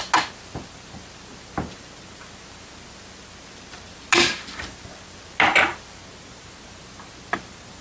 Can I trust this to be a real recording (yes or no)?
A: yes